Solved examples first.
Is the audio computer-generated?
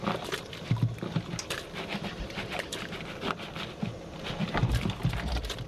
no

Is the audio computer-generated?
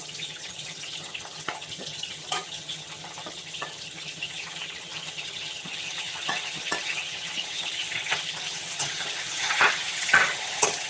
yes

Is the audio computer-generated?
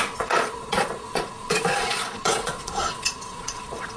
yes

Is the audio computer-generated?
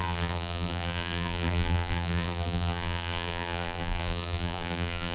yes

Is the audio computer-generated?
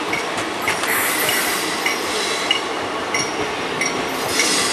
no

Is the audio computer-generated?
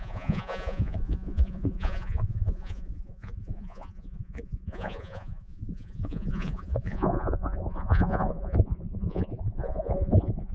yes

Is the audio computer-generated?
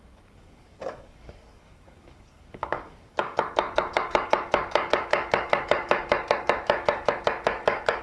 yes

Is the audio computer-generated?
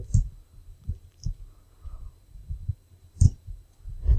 yes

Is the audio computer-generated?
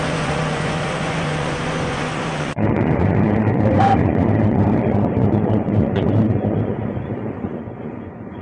yes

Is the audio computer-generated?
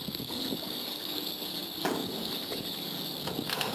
yes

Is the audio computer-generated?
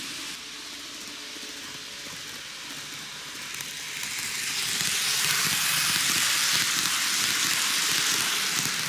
no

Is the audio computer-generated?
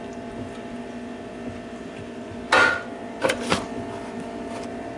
no